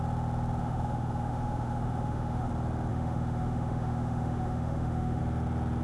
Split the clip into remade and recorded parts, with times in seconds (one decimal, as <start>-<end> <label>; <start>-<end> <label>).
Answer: 0.0-0.6 recorded; 0.6-2.5 remade; 2.5-2.9 recorded; 2.9-5.2 remade; 5.2-5.8 recorded